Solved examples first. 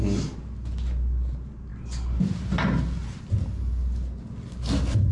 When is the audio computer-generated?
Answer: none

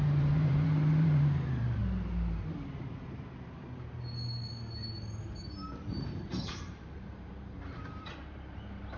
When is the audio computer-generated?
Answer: 0.0-1.8 (vocoder, BigVGAN v2); 5.3-9.0